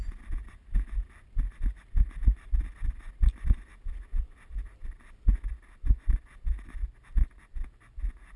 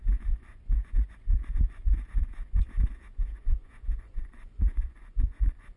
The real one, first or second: first